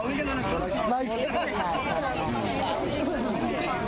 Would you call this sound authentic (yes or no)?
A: yes